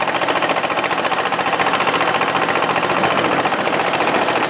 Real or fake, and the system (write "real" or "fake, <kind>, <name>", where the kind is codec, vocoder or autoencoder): real